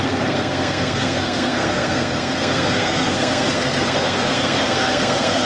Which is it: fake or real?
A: fake